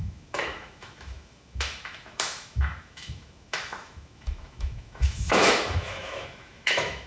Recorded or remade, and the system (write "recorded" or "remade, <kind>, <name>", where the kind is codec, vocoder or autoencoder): remade, autoencoder, DAC-VAE